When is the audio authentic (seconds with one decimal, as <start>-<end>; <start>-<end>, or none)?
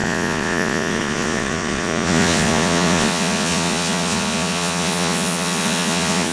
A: none